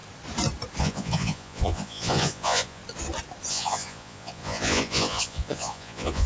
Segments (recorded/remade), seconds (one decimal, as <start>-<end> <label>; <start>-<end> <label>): 0.0-0.8 recorded; 0.8-2.8 remade; 2.8-3.5 recorded; 3.5-6.3 remade